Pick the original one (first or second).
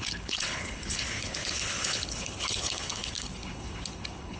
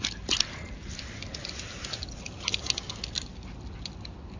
second